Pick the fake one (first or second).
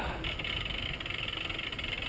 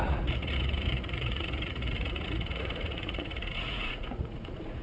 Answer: second